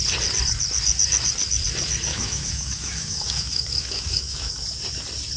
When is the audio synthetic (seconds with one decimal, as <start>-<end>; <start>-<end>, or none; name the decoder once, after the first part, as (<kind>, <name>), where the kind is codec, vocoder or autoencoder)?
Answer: 2.1-4.5 (autoencoder, DAC-VAE)